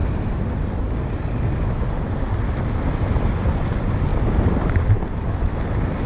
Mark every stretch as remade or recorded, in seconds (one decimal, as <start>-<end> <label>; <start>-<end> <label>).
0.0-4.1 recorded; 4.1-4.7 remade; 4.7-6.1 recorded